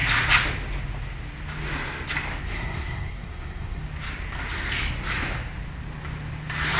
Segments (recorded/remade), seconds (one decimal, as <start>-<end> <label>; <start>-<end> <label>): 0.0-2.4 recorded; 2.4-3.8 remade; 3.8-6.8 recorded